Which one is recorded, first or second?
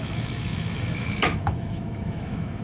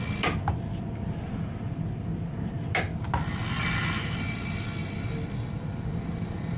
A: second